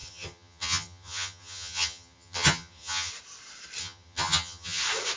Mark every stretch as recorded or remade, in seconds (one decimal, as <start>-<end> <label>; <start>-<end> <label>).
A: 0.0-3.1 remade; 3.1-3.8 recorded; 3.8-4.8 remade; 4.8-5.2 recorded